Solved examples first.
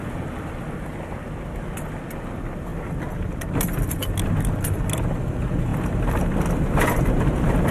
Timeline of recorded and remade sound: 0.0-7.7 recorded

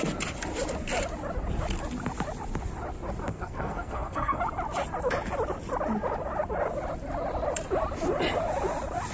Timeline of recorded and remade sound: 0.0-3.3 recorded; 3.3-4.4 remade; 4.4-9.1 recorded

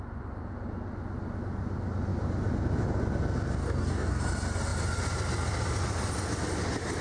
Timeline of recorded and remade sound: 0.0-3.6 recorded; 3.6-4.2 remade; 4.2-7.0 recorded

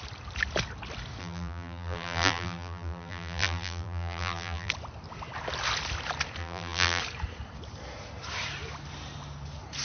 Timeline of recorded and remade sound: 0.0-1.2 recorded; 1.2-4.7 remade; 4.7-6.4 recorded; 6.4-7.0 remade; 7.0-9.8 recorded